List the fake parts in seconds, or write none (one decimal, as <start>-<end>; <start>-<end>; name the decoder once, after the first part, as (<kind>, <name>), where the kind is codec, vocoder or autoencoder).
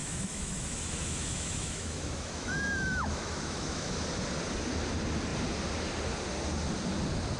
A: 0.0-4.0 (autoencoder, DAC-VAE)